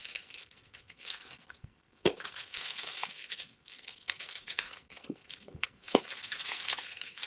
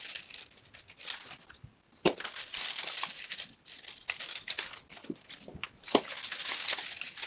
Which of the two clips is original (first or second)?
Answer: second